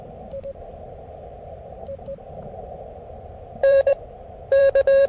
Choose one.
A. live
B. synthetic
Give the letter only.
B